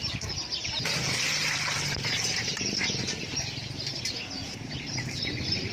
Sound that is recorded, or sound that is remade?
remade